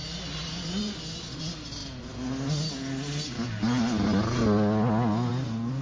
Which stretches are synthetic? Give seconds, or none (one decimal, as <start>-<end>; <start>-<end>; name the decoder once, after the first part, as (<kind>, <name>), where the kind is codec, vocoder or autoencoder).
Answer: none